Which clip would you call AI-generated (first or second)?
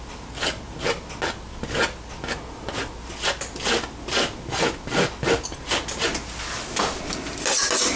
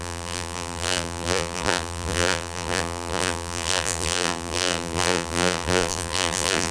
second